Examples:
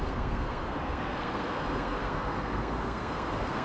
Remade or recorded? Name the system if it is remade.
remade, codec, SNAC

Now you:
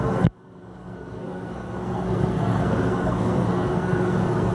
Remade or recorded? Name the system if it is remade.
remade, codec, SNAC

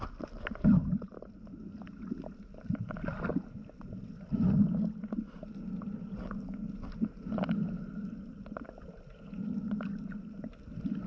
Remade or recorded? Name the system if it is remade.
recorded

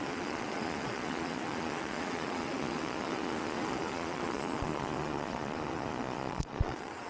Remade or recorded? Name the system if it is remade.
remade, vocoder, Vocos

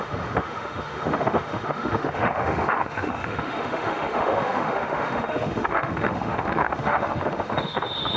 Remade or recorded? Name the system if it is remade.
remade, autoencoder, DAC-VAE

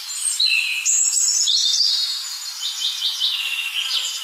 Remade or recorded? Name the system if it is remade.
recorded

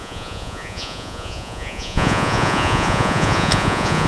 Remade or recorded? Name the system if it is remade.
remade, vocoder, Vocos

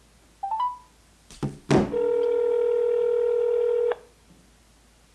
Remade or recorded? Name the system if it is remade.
recorded